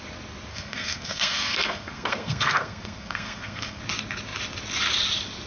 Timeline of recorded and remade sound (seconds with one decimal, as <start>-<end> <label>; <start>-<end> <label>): 0.0-0.5 recorded; 0.5-3.8 remade; 3.8-5.5 recorded